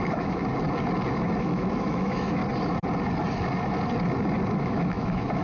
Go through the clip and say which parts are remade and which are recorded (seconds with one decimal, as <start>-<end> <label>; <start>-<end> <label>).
0.0-0.4 remade; 0.4-1.4 recorded; 1.4-2.4 remade; 2.4-4.6 recorded; 4.6-5.4 remade